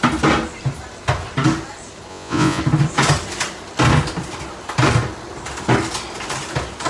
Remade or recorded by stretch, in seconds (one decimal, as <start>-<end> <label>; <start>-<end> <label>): 0.0-2.1 recorded; 2.1-2.6 remade; 2.6-6.9 recorded